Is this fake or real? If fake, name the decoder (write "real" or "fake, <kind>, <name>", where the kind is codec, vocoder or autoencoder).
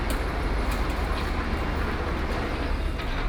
real